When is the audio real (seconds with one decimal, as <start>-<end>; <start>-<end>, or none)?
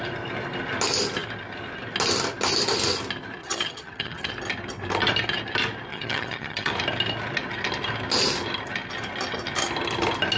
0.0-3.4; 4.3-5.9; 6.7-10.4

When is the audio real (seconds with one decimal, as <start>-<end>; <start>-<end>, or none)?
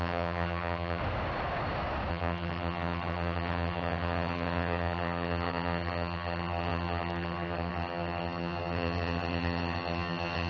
1.0-2.1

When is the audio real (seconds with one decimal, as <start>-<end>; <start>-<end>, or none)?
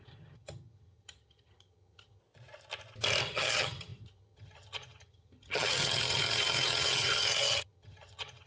2.2-3.2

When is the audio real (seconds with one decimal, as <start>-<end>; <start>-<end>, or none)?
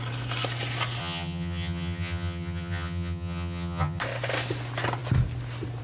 0.0-1.0; 4.0-5.8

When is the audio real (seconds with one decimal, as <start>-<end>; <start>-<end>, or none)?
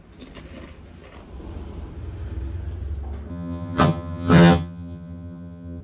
0.0-3.3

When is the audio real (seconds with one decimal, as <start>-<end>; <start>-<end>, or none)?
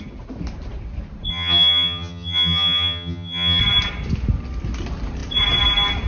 0.0-1.3; 3.6-6.1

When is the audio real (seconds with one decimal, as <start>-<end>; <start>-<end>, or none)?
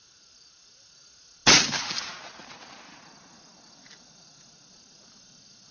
0.0-5.7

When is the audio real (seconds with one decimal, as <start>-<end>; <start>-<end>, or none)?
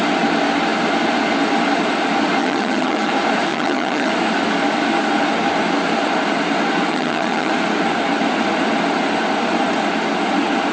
0.0-2.4; 3.1-3.5; 4.1-6.9; 7.5-10.7